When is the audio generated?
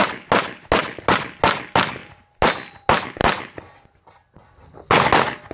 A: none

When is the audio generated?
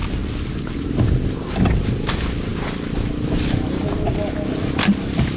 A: none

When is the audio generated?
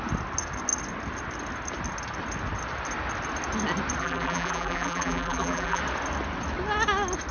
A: 4.0-5.8 (vocoder, BigVGAN v2)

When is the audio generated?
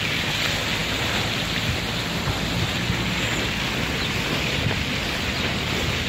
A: none